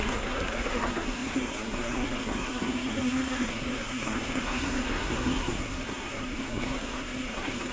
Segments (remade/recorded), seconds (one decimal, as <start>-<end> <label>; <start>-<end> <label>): 0.0-7.7 remade